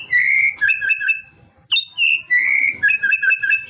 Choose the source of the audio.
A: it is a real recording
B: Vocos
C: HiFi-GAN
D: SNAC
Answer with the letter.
A